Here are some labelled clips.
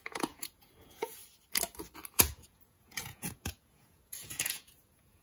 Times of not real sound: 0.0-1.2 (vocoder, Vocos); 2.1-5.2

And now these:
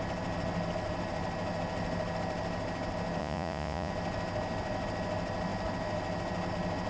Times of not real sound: 3.2-3.9 (vocoder, Vocos)

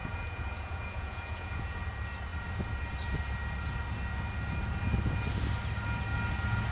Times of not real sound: 0.0-1.8 (vocoder, Vocos)

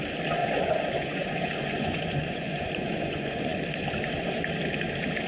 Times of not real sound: 0.4-3.6 (vocoder, Vocos)

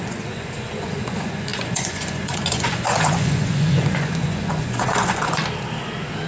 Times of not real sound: 0.0-5.4 (vocoder, Vocos)

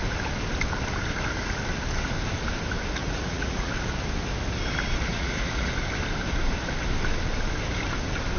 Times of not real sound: 3.0-3.7 (vocoder, Vocos); 5.1-5.7

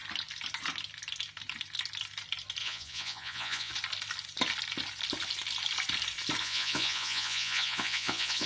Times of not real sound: 2.6-3.7 (vocoder, Vocos); 6.4-8.5